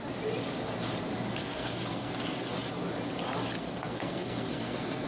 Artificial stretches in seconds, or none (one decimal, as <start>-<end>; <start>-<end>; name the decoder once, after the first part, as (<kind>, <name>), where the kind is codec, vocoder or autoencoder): 1.4-2.1 (codec, SNAC); 3.6-5.1